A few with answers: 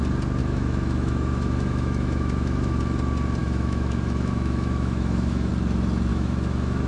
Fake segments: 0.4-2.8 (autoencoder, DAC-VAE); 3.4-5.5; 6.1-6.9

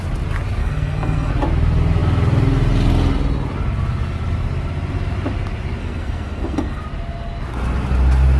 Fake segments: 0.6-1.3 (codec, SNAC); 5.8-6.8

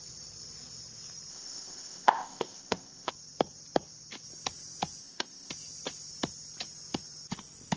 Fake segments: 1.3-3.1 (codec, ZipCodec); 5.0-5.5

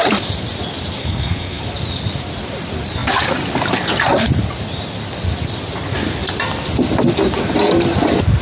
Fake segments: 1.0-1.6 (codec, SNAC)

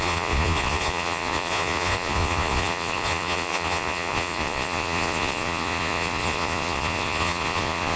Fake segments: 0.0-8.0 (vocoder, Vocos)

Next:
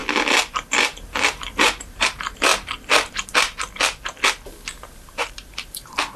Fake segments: 1.8-2.5 (vocoder, BigVGAN v2); 4.7-6.2

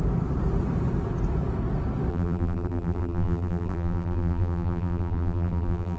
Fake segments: 2.1-6.0 (vocoder, BigVGAN v2)

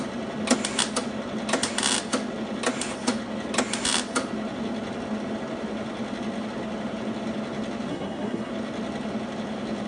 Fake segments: 7.9-8.5 (codec, SNAC)